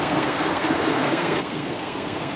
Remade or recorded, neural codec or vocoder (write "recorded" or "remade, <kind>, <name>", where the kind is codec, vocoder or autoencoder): remade, codec, SNAC